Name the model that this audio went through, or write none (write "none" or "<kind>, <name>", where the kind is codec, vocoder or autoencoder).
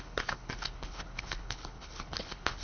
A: codec, HILCodec